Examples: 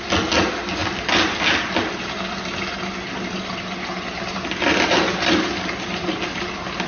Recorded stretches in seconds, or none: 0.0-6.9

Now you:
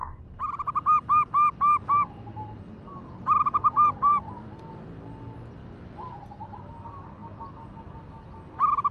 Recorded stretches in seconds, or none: 0.0-4.1; 4.7-5.6; 6.6-8.9

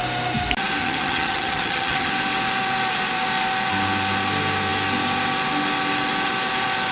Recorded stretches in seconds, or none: 0.0-0.8; 2.1-6.9

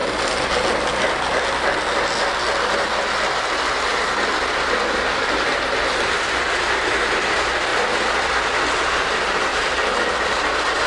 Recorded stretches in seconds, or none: 0.0-9.5; 10.0-10.9